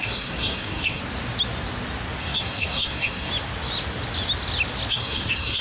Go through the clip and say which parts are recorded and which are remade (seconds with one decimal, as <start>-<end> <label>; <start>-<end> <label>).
0.0-1.0 remade; 1.0-2.2 recorded; 2.2-3.3 remade; 3.3-4.9 recorded; 4.9-5.6 remade